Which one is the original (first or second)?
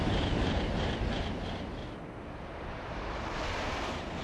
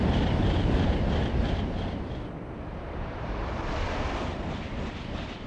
first